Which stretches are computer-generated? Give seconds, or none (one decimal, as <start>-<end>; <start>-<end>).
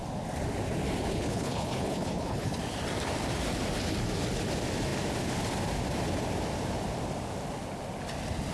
1.1-2.6